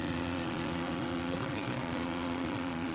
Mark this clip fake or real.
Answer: fake